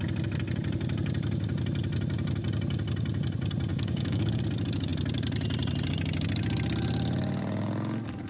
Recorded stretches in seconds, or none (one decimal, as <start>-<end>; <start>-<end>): 0.0-3.7; 4.4-8.3